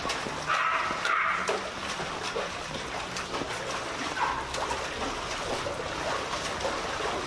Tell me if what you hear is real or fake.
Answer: real